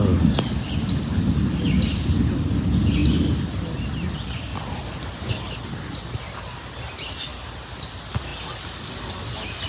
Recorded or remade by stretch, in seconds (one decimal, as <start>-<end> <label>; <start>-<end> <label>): 0.0-9.7 recorded